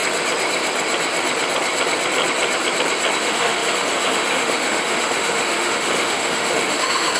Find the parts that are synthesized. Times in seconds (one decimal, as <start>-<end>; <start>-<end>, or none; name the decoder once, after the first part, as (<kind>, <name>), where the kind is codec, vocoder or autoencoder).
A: 3.2-7.2 (autoencoder, DAC-VAE)